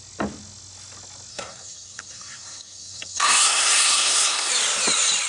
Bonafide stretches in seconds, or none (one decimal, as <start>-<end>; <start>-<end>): 0.0-1.3; 4.5-5.3